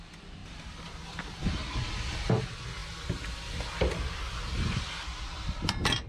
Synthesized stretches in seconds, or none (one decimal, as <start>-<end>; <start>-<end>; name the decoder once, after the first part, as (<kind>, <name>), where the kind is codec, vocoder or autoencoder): none